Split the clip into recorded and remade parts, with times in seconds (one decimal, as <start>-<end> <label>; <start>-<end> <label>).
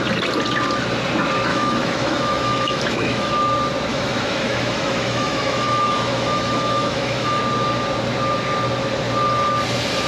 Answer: 0.0-1.5 recorded; 1.5-3.3 remade; 3.3-3.9 recorded; 3.9-7.4 remade; 7.4-10.1 recorded